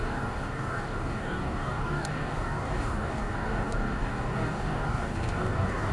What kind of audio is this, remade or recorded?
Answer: remade